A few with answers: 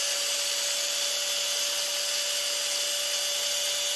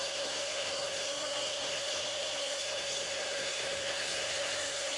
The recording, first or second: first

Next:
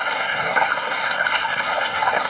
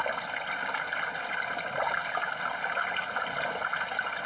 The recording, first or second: second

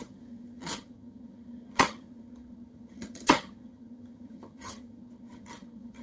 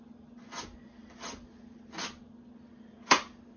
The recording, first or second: second